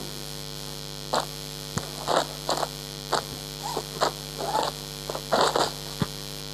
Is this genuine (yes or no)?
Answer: yes